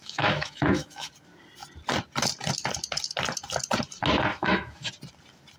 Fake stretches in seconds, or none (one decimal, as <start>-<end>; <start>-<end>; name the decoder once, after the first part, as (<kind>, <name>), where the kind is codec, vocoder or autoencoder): 0.0-1.1 (autoencoder, DAC-VAE); 4.3-4.9